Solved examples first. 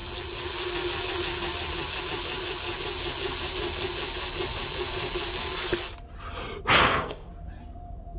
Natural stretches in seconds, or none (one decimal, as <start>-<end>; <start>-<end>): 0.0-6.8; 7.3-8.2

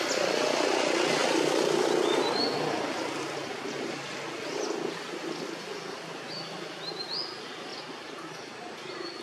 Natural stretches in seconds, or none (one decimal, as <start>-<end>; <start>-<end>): 0.0-9.2

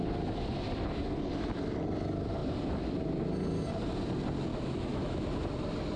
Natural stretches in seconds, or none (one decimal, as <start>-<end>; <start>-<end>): 0.0-4.5; 5.2-6.0